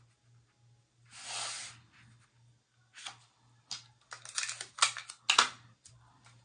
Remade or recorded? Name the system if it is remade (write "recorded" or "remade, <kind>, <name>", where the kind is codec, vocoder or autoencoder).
recorded